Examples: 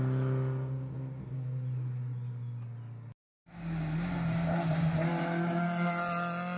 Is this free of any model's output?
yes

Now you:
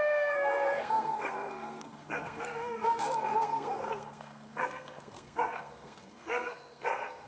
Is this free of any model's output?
no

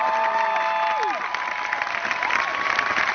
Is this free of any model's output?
yes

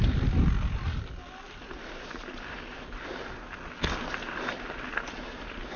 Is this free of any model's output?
yes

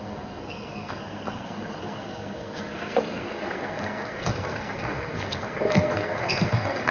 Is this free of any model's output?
no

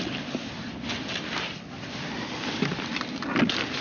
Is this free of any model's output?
yes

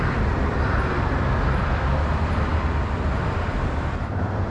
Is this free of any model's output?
no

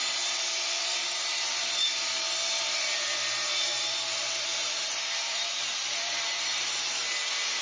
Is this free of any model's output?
no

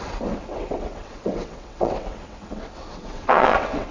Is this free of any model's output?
no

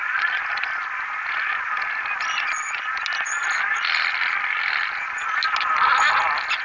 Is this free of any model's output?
yes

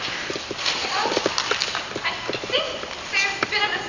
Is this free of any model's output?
yes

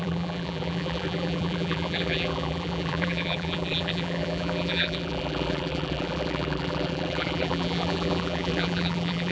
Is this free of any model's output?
no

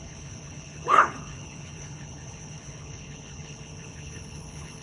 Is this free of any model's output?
no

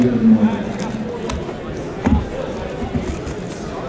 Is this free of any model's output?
yes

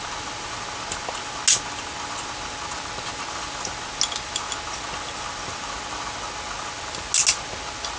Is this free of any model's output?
yes